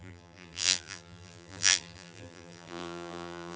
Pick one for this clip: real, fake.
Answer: fake